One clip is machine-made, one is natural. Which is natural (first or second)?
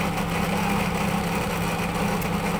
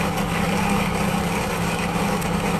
first